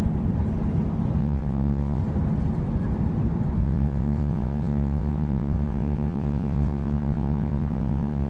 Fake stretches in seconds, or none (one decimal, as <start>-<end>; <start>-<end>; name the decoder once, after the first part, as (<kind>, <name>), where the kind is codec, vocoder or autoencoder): 1.2-2.0 (vocoder, WaveNeXt); 3.6-8.3